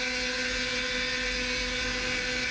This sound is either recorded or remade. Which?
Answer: recorded